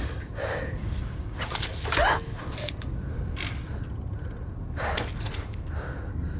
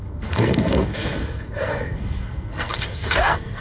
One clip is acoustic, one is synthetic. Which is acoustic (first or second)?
first